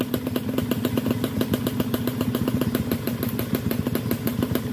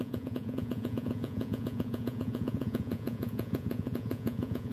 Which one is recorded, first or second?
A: first